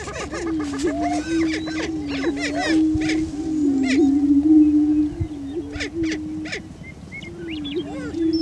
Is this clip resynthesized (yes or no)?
no